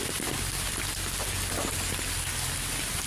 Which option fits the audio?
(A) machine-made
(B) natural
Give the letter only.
B